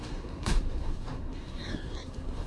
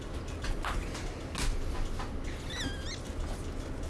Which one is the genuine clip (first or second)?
second